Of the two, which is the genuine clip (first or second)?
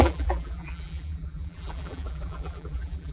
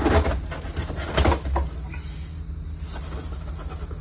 second